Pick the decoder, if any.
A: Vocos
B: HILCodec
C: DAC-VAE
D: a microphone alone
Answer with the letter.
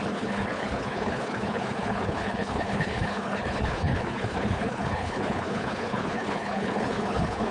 B